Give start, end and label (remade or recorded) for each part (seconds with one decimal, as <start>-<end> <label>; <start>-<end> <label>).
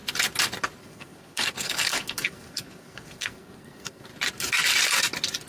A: 0.0-0.8 recorded; 0.8-4.1 remade; 4.1-5.5 recorded